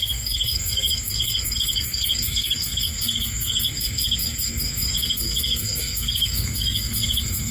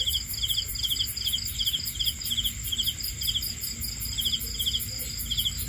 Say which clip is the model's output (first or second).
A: first